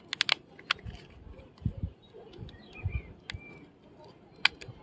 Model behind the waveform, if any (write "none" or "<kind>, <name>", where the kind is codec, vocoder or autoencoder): none